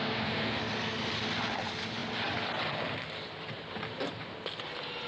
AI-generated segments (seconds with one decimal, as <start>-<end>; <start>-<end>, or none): 0.0-0.6